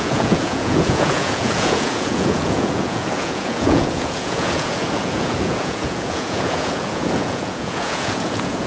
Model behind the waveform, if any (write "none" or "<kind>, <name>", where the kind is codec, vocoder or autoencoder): vocoder, Vocos